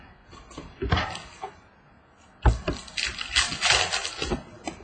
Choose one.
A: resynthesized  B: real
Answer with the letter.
B